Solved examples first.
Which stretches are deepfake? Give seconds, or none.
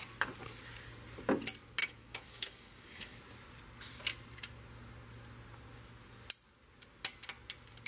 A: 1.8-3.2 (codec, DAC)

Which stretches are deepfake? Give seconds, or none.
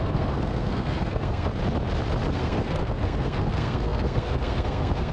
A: 0.0-1.5 (codec, SNAC); 2.3-5.1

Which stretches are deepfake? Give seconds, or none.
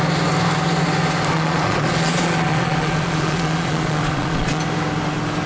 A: 1.3-4.6 (vocoder, Vocos)